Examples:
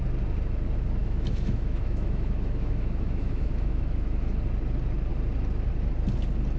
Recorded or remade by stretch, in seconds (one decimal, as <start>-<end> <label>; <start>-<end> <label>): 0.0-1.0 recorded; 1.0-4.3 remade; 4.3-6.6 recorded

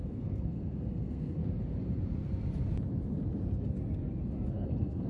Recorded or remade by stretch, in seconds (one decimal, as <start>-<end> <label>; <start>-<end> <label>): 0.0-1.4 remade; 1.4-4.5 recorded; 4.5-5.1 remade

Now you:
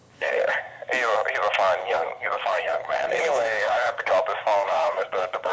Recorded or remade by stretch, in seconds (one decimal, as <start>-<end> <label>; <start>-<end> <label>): 0.0-0.6 remade; 0.6-1.8 recorded; 1.8-4.1 remade; 4.1-4.6 recorded; 4.6-5.5 remade